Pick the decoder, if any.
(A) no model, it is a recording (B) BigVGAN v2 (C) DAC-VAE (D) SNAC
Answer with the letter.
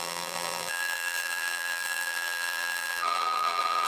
B